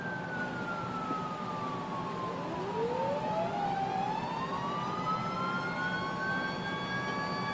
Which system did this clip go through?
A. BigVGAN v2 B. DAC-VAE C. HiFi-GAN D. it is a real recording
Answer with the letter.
D